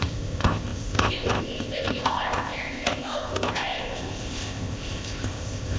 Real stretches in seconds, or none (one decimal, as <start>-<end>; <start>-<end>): none